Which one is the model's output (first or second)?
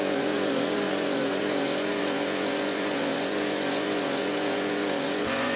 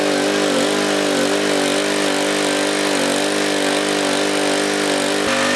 first